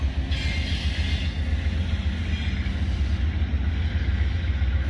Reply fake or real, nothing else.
real